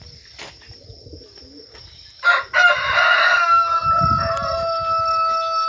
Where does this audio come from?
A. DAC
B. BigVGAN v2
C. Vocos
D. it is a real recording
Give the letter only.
D